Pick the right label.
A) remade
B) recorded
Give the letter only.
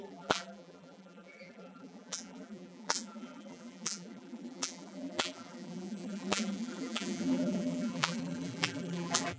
A